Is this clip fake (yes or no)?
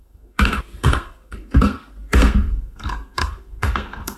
yes